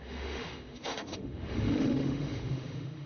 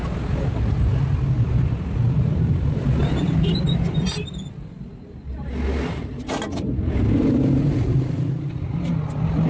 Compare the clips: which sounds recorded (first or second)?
second